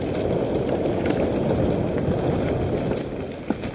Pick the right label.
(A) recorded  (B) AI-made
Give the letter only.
A